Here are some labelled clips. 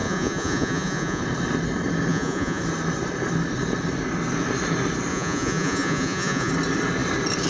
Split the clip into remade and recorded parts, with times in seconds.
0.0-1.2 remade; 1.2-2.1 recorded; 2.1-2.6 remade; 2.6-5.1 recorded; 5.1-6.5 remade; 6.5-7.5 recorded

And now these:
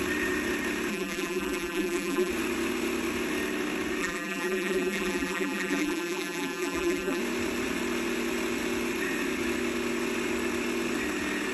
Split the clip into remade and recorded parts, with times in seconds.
0.0-0.9 recorded; 0.9-2.3 remade; 2.3-4.0 recorded; 4.0-7.2 remade; 7.2-11.5 recorded

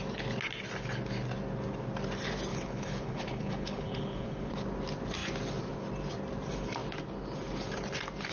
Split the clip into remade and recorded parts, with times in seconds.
0.0-2.5 recorded; 2.5-4.5 remade; 4.5-8.3 recorded

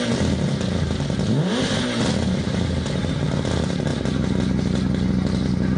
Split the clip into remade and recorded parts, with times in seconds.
0.0-5.8 recorded

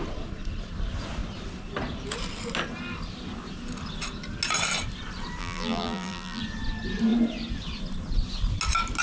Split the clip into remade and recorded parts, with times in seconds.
0.0-5.4 recorded; 5.4-6.4 remade; 6.4-9.0 recorded